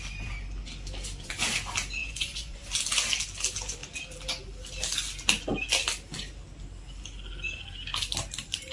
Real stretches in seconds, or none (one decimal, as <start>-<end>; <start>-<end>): 0.0-2.0; 2.6-8.7